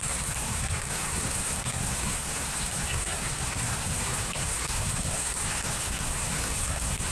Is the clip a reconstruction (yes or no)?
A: yes